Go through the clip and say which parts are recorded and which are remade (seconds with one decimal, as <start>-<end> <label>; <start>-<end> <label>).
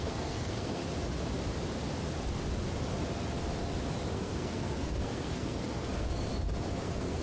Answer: 0.0-0.8 remade; 0.8-4.1 recorded; 4.1-6.3 remade; 6.3-6.8 recorded; 6.8-7.2 remade